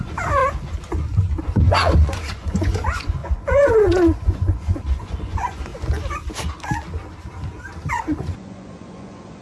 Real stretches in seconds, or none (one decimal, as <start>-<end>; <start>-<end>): 0.4-1.4; 5.7-7.9